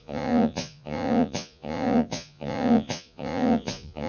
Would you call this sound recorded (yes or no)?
no